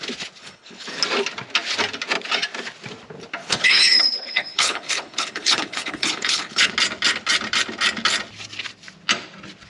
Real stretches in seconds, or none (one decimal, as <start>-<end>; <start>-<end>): 0.0-0.4; 1.0-3.4; 6.7-9.7